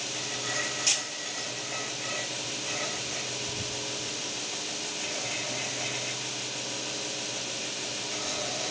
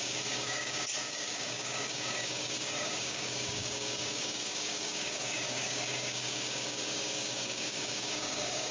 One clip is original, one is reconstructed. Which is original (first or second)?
first